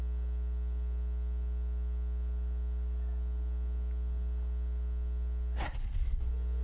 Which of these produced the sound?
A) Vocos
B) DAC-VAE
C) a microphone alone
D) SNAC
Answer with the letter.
C